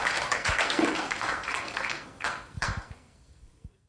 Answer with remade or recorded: remade